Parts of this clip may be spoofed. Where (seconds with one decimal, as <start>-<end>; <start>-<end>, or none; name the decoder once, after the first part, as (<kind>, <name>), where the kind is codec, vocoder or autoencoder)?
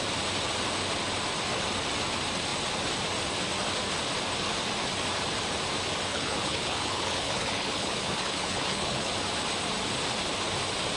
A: 6.1-9.1 (codec, HILCodec)